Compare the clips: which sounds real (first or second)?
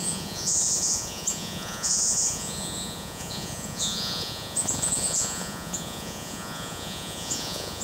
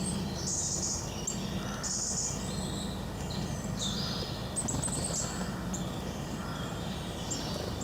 second